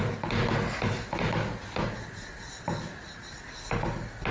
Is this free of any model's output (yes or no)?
yes